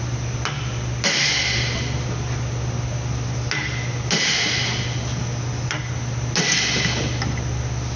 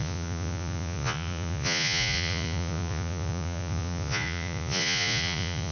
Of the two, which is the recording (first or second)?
first